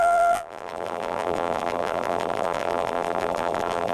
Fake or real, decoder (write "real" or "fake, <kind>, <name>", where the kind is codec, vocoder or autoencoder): fake, vocoder, BigVGAN v2